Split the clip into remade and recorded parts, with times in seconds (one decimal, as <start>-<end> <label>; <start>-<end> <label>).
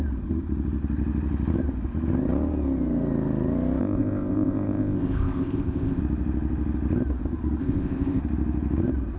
0.0-3.8 recorded; 3.8-6.0 remade; 6.0-7.6 recorded; 7.6-8.2 remade; 8.2-9.2 recorded